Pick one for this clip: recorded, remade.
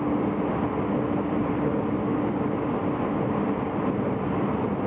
recorded